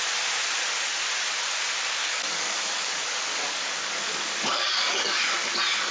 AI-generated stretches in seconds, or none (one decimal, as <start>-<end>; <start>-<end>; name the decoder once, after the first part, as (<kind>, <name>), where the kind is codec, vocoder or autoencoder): 2.0-5.5 (codec, DAC)